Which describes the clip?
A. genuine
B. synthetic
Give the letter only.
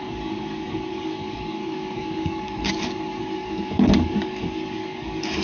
B